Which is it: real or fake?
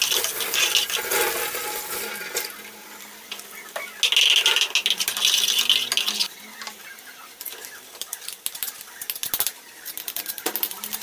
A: real